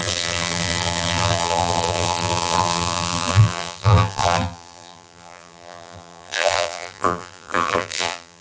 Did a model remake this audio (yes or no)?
yes